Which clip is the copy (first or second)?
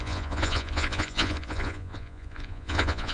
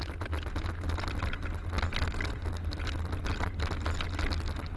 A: first